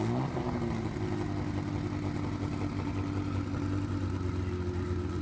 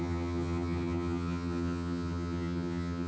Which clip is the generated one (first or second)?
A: second